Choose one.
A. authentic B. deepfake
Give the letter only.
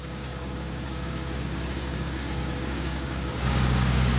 B